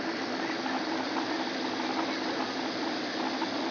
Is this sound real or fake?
real